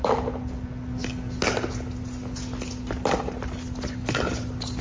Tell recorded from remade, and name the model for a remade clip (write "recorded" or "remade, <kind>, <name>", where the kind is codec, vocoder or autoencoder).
recorded